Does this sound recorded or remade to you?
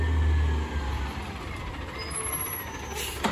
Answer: recorded